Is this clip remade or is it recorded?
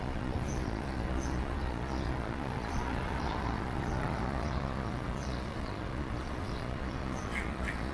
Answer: remade